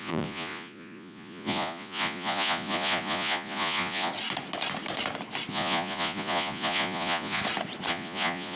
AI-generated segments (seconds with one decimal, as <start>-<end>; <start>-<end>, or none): 0.0-4.1; 5.5-7.4; 7.9-8.6